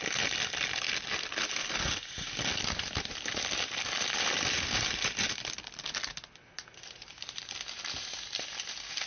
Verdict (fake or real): real